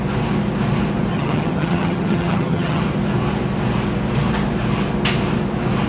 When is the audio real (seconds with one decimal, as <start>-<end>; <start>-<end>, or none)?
0.0-1.1; 2.8-5.9